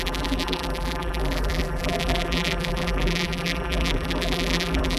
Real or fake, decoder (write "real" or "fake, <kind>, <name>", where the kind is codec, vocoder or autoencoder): fake, vocoder, BigVGAN v2